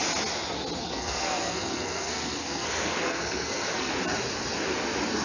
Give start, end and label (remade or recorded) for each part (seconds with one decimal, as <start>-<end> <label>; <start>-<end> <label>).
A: 0.0-0.8 recorded; 0.8-3.9 remade; 3.9-5.2 recorded